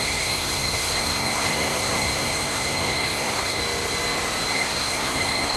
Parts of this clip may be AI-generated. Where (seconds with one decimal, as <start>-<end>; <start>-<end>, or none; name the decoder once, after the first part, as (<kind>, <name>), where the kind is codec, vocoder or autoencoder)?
0.0-3.6 (codec, SNAC); 4.5-5.6

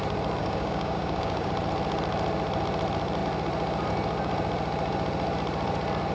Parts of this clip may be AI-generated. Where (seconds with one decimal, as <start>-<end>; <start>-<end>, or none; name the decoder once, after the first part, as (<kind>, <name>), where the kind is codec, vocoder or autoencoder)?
0.4-1.5 (codec, DAC)